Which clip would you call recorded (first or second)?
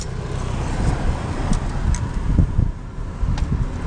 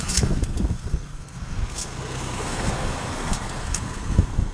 first